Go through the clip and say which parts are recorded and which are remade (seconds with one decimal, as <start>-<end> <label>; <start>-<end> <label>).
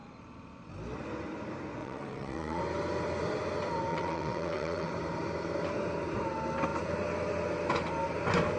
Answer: 0.0-1.8 recorded; 1.8-2.6 remade; 2.6-3.9 recorded; 3.9-4.9 remade; 4.9-8.6 recorded